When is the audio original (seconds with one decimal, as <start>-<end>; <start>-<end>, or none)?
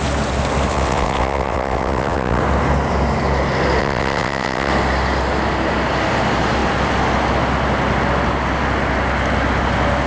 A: 0.0-0.7; 2.4-3.8; 4.7-10.1